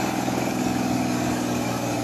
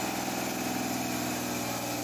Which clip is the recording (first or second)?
second